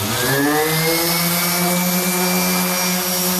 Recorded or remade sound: recorded